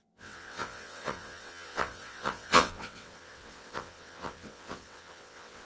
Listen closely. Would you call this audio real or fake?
fake